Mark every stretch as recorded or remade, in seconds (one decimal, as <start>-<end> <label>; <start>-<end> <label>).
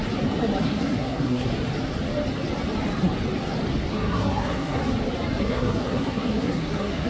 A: 0.0-0.6 recorded; 0.6-1.5 remade; 1.5-3.9 recorded; 3.9-4.8 remade; 4.8-5.4 recorded; 5.4-7.1 remade